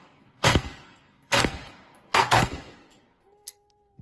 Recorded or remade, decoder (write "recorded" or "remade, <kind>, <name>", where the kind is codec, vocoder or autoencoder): remade, codec, SNAC